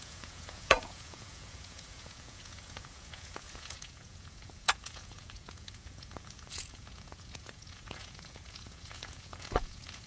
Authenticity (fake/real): fake